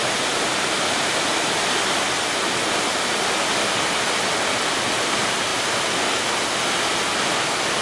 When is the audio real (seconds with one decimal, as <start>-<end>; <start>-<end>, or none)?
0.0-7.8